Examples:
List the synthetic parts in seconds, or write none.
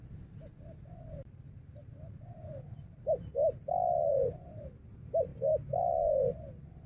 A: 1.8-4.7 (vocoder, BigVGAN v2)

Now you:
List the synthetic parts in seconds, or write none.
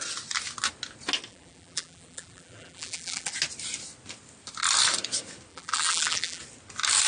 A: 1.3-3.3 (vocoder, BigVGAN v2); 5.5-6.4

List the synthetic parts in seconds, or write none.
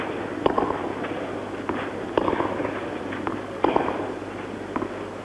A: none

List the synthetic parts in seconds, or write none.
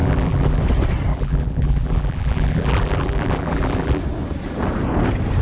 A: 0.0-0.6 (vocoder, BigVGAN v2); 1.1-4.0